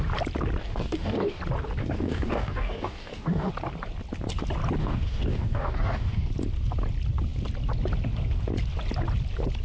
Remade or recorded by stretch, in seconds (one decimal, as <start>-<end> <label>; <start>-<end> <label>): 0.0-0.6 recorded; 0.6-1.4 remade; 1.4-1.8 recorded; 1.8-3.5 remade; 3.5-4.8 recorded; 4.8-6.3 remade; 6.3-9.6 recorded